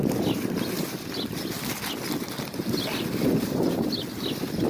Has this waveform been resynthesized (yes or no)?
no